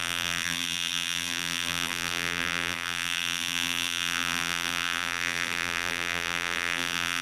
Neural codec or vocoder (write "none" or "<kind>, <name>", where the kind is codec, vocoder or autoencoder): vocoder, BigVGAN v2